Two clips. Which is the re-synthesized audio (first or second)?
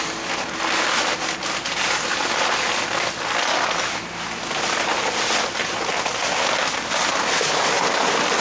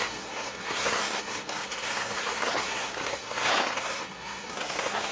second